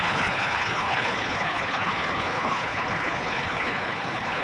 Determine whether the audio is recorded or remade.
remade